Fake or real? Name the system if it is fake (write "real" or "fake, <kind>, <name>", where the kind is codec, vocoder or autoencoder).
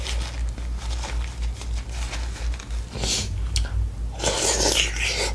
real